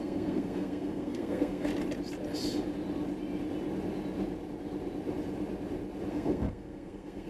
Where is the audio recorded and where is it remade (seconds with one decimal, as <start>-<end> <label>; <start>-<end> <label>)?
0.0-1.7 remade; 1.7-6.1 recorded; 6.1-7.3 remade